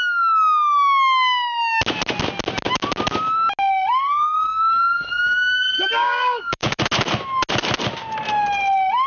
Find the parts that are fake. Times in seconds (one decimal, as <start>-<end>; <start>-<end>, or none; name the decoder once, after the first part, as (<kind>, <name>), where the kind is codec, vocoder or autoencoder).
4.5-6.8 (codec, DAC)